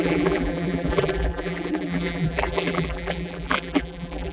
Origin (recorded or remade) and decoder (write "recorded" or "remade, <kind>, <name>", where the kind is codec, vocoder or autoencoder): remade, vocoder, BigVGAN v2